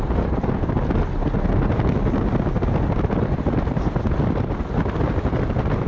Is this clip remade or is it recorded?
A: recorded